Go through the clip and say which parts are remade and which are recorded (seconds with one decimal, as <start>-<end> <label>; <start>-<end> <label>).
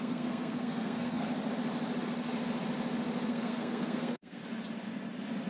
0.0-1.3 remade; 1.3-3.3 recorded; 3.3-4.4 remade; 4.4-5.5 recorded